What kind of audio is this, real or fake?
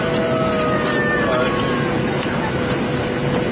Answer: real